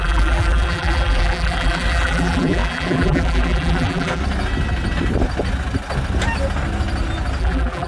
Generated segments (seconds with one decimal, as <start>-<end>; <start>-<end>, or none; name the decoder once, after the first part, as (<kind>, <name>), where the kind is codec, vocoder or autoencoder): 0.0-4.2 (vocoder, BigVGAN v2); 7.4-7.9